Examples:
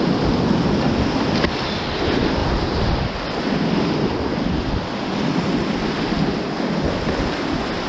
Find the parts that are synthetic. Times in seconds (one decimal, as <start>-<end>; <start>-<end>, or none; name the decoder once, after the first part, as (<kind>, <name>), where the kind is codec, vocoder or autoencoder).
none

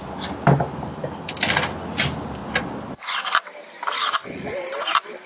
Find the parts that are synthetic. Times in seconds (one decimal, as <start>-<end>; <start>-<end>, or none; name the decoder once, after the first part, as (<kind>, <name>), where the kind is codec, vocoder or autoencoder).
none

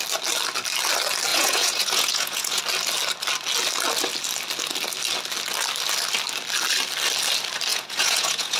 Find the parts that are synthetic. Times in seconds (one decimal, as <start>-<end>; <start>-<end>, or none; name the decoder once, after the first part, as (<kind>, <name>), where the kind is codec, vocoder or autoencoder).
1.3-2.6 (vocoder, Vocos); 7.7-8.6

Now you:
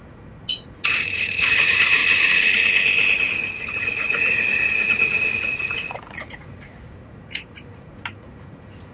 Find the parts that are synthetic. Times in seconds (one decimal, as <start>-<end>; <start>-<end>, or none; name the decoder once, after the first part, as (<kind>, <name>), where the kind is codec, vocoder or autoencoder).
0.0-2.0 (vocoder, Vocos); 3.5-8.9

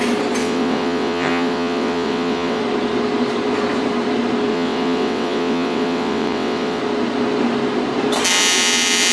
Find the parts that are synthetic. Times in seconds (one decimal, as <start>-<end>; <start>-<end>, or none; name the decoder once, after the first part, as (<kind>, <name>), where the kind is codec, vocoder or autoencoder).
0.4-2.6 (vocoder, WaveNeXt); 4.5-6.8

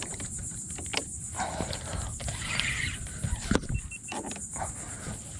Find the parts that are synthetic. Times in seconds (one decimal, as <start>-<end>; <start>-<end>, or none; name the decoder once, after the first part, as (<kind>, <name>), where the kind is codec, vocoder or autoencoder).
none

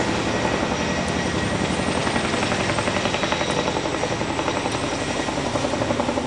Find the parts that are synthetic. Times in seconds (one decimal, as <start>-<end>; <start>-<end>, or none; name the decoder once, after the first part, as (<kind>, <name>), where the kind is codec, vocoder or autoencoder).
none

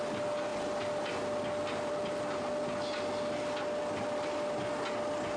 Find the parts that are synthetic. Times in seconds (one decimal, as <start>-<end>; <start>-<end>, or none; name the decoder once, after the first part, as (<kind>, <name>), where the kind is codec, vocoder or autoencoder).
none